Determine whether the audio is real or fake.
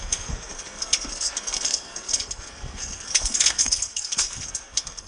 fake